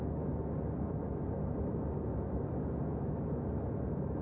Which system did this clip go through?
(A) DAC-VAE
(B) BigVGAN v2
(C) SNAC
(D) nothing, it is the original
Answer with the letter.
D